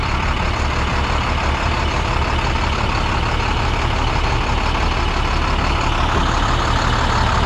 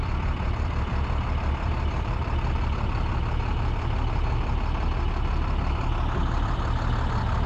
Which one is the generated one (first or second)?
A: second